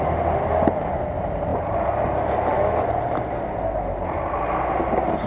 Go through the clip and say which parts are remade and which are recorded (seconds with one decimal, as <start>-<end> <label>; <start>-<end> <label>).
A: 0.0-5.3 recorded

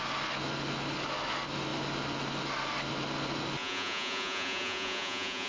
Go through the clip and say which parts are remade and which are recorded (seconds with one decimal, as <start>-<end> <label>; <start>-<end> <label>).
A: 0.0-3.6 recorded; 3.6-5.5 remade

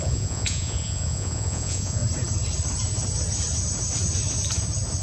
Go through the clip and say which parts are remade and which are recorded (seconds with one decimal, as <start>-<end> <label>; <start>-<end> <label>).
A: 0.0-2.0 remade; 2.0-5.0 recorded

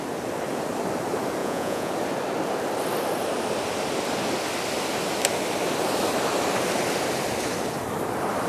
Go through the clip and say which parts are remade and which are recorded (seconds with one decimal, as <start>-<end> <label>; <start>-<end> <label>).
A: 0.0-1.4 recorded; 1.4-1.9 remade; 1.9-8.5 recorded